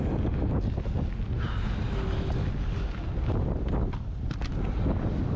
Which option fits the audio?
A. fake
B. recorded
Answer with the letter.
B